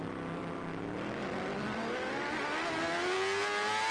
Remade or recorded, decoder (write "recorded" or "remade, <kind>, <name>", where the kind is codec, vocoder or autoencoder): recorded